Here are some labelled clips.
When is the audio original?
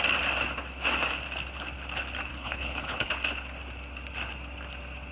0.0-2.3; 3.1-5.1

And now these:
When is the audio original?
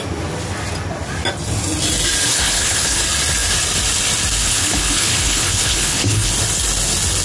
0.0-2.3; 3.0-4.4; 6.3-7.2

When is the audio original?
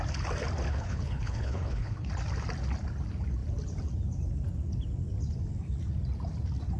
0.0-0.7; 2.1-6.8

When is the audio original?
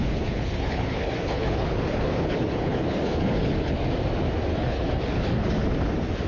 3.8-4.5; 5.5-6.3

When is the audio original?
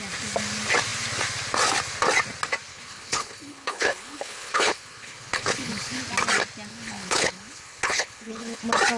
0.0-2.7; 6.0-6.7; 8.6-9.0